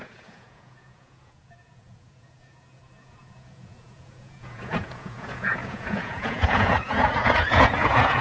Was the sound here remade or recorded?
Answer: remade